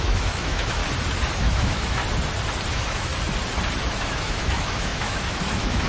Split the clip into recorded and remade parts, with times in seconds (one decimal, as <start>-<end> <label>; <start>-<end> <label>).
0.0-0.8 remade; 0.8-1.4 recorded; 1.4-2.0 remade; 2.0-2.7 recorded; 2.7-3.1 remade; 3.1-3.9 recorded; 3.9-5.9 remade